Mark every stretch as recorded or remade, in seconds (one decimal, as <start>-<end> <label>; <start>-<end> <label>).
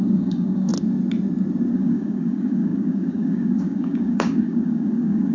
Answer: 0.0-0.7 remade; 0.7-1.7 recorded; 1.7-5.3 remade